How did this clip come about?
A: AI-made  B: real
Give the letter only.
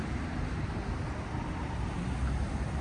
B